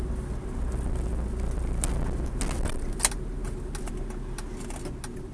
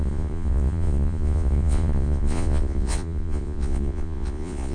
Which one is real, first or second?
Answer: first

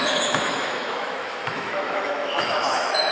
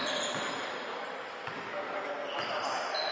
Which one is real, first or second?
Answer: second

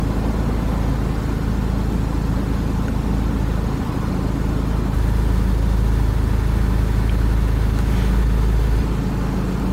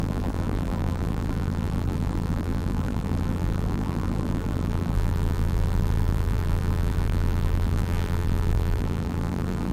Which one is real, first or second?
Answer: first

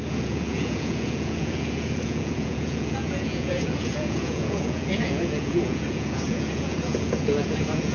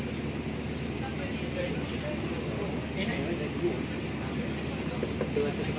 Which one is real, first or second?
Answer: second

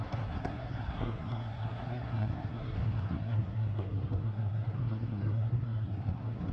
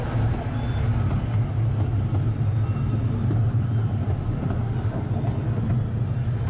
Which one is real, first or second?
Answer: second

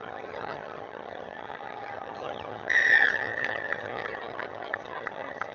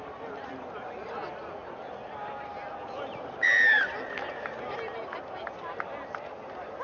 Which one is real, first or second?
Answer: second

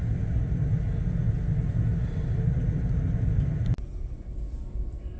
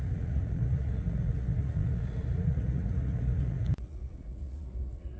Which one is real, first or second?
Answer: first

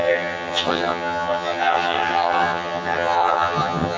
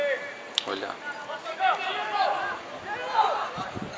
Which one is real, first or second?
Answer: second